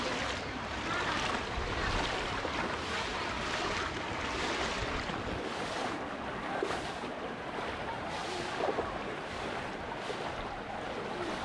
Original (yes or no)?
yes